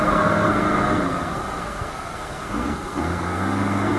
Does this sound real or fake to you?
fake